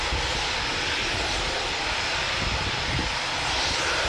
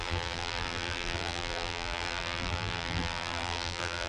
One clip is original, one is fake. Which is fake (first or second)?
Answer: second